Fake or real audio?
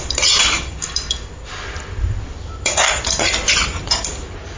fake